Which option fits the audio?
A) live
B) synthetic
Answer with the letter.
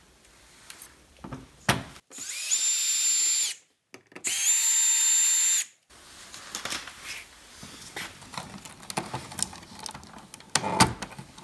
A